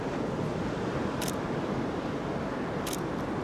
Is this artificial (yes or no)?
no